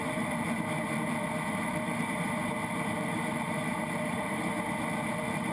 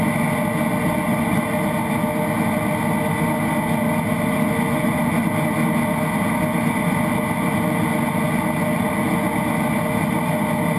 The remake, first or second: first